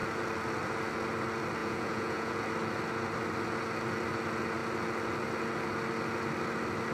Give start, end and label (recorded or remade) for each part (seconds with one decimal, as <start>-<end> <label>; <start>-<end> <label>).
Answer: 0.0-1.6 recorded; 1.6-2.4 remade; 2.4-6.9 recorded